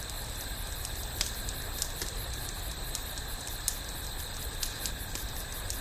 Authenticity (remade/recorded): recorded